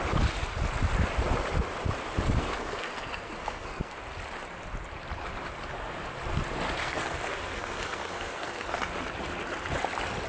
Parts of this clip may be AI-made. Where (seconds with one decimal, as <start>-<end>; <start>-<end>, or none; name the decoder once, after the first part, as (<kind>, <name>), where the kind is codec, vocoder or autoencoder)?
2.4-4.0 (codec, SNAC); 6.8-8.8